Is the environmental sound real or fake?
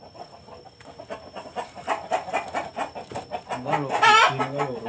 real